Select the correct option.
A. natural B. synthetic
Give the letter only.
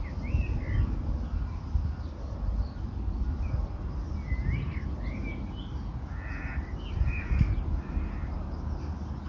A